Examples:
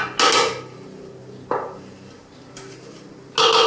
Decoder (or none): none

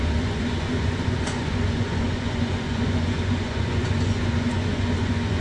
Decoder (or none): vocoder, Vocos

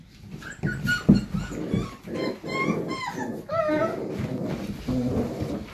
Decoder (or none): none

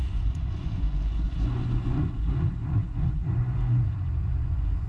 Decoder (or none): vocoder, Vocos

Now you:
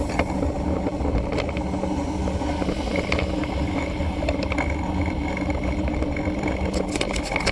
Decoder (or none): none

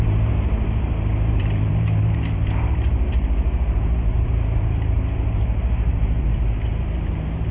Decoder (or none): vocoder, BigVGAN v2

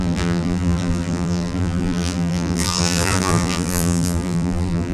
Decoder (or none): vocoder, BigVGAN v2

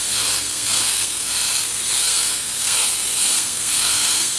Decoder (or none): codec, SNAC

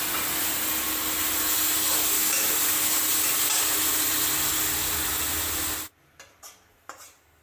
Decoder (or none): none